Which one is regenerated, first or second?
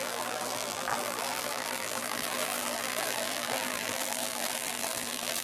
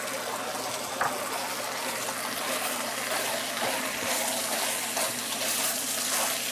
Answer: first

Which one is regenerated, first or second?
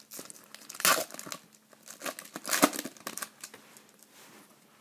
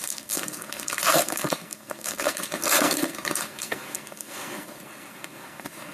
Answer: second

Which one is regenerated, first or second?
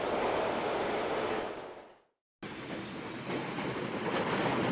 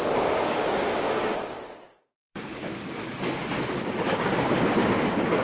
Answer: second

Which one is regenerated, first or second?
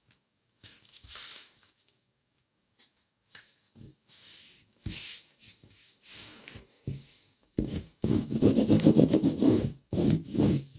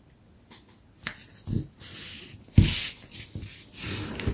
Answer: first